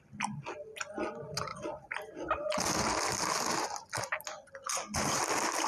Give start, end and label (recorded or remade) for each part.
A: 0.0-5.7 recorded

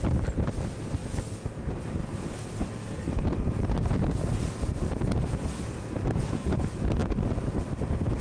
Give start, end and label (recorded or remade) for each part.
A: 0.0-8.2 recorded

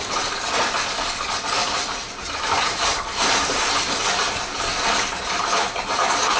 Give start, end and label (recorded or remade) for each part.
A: 0.0-1.6 recorded; 1.6-3.6 remade; 3.6-4.7 recorded; 4.7-6.4 remade

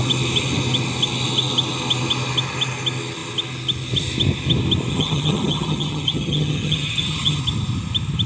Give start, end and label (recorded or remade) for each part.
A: 0.0-4.9 recorded; 4.9-7.4 remade; 7.4-8.3 recorded